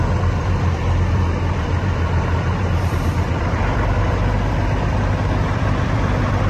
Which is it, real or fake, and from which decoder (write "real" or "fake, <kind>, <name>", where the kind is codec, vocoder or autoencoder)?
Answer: fake, vocoder, BigVGAN v2